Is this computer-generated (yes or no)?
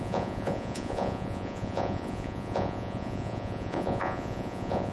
yes